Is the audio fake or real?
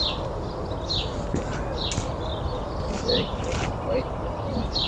real